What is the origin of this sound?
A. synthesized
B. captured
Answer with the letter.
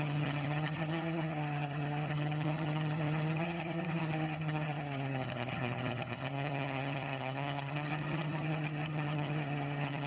A